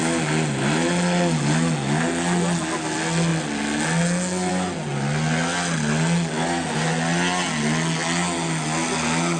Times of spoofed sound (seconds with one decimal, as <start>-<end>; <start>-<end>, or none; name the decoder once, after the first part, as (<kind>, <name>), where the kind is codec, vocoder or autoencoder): none